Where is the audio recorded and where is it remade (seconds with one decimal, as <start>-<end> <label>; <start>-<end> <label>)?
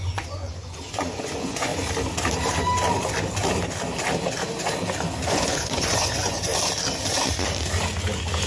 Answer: 0.0-1.7 remade; 1.7-5.3 recorded; 5.3-6.5 remade; 6.5-8.5 recorded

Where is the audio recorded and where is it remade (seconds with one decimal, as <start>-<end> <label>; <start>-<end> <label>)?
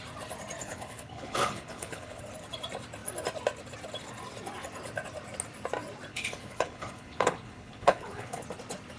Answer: 0.0-0.6 recorded; 0.6-2.2 remade; 2.2-6.1 recorded; 6.1-8.4 remade; 8.4-9.0 recorded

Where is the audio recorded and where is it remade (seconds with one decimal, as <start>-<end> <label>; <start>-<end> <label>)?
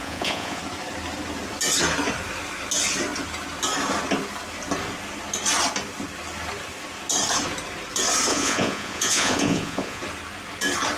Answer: 0.0-0.6 remade; 0.6-8.3 recorded; 8.3-10.0 remade; 10.0-11.0 recorded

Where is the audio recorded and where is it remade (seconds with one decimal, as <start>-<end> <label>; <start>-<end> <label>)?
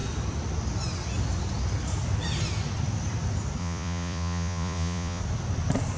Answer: 0.0-3.6 recorded; 3.6-5.2 remade; 5.2-6.0 recorded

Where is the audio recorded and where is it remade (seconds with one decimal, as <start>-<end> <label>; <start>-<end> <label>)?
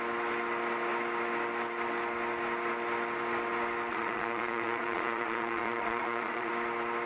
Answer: 0.0-3.9 recorded; 3.9-6.5 remade; 6.5-7.1 recorded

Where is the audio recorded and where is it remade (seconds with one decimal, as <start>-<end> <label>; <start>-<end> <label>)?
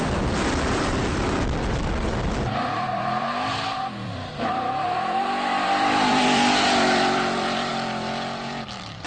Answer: 0.0-9.1 remade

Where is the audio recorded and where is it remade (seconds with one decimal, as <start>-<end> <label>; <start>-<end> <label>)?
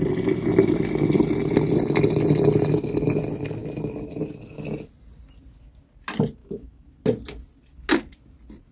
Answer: 0.0-6.4 recorded; 6.4-6.9 remade; 6.9-8.7 recorded